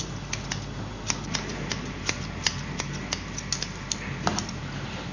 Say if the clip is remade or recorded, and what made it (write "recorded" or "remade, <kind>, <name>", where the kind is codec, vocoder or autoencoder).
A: recorded